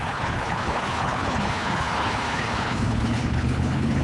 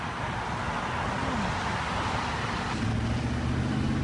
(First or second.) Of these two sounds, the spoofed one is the first